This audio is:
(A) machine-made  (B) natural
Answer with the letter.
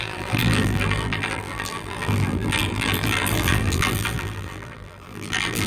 A